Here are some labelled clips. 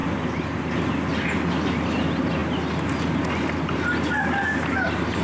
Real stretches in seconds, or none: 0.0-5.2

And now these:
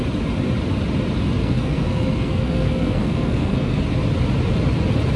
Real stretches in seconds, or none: 0.0-1.4; 3.8-5.2